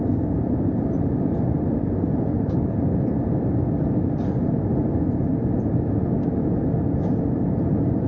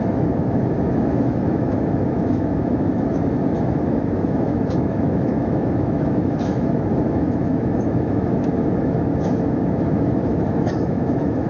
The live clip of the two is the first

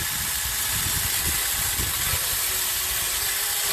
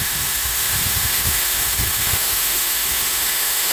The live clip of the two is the first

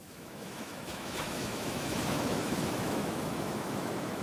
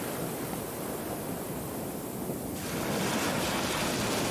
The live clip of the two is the second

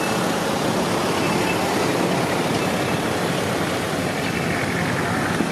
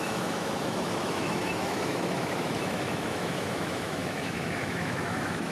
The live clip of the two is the first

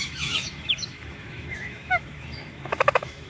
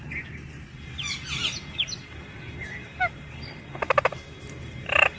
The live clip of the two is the second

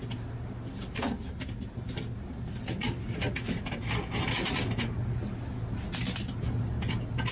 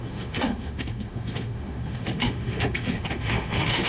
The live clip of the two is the first